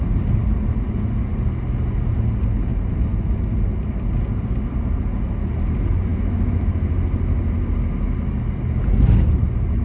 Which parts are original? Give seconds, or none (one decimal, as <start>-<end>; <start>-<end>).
0.0-6.1; 6.7-9.8